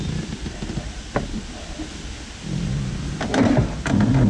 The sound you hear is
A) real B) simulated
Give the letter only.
A